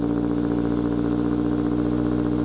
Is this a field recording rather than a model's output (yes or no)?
yes